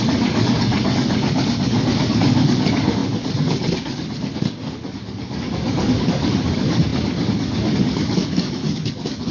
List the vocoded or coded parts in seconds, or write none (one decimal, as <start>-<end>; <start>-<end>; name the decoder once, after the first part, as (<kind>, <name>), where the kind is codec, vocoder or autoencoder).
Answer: 0.0-9.3 (codec, DAC)